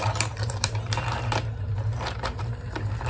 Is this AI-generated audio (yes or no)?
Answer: yes